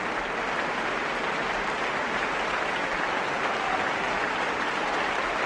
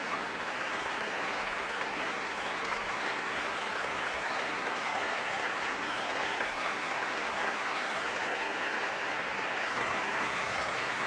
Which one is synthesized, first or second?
second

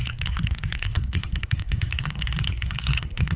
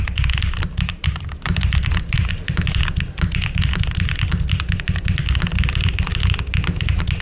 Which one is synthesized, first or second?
first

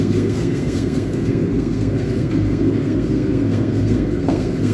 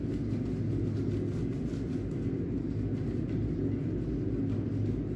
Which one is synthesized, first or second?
first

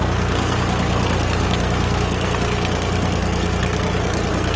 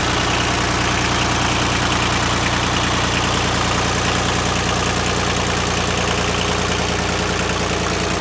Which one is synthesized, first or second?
first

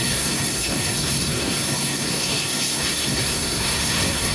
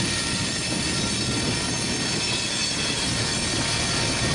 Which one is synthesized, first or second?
first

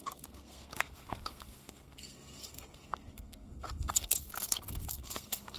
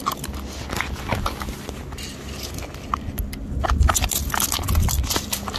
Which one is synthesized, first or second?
first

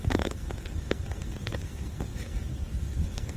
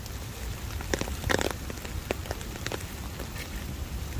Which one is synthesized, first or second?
first